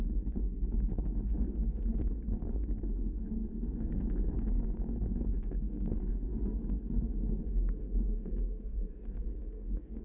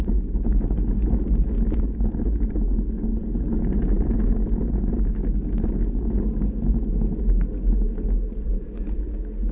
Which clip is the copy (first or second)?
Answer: first